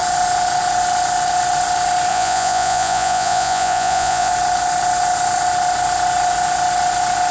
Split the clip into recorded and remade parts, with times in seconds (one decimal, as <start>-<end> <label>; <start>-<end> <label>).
0.0-2.1 recorded; 2.1-4.3 remade; 4.3-7.3 recorded